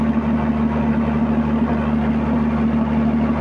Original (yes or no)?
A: yes